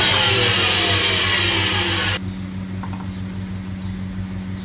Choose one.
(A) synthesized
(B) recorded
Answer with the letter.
B